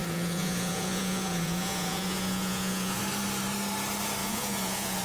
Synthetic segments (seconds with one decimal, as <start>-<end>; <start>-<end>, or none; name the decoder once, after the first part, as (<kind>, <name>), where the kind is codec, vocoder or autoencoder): 0.0-3.0 (vocoder, Vocos); 4.2-5.0